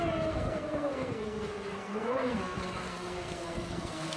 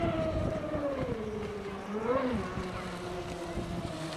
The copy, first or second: first